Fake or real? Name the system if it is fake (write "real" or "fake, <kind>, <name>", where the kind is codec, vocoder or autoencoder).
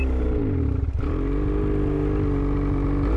real